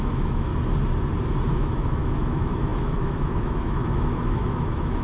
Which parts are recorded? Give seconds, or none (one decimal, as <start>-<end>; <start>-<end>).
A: 0.5-1.5